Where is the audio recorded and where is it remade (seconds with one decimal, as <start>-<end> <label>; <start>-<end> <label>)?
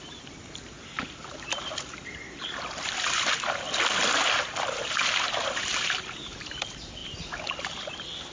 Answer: 0.0-7.0 remade; 7.0-7.9 recorded; 7.9-8.3 remade